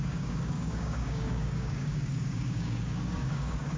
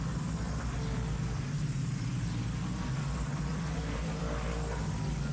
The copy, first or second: first